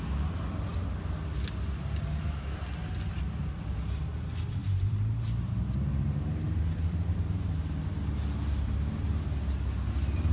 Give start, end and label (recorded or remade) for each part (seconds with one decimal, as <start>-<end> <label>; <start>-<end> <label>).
0.0-4.6 recorded; 4.6-6.6 remade; 6.6-10.3 recorded